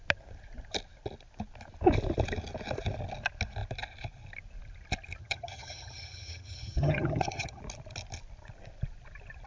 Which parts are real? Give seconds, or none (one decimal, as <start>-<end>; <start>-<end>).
0.0-5.2; 7.6-9.5